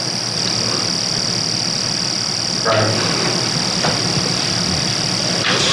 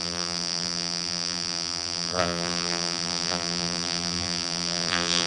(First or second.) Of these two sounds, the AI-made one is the second